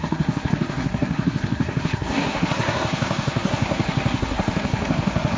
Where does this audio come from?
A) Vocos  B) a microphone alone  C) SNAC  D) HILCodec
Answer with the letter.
C